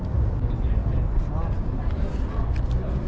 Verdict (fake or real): real